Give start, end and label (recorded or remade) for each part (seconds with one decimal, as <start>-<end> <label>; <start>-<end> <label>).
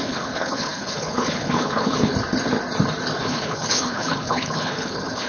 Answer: 0.0-2.1 remade; 2.1-3.2 recorded; 3.2-5.3 remade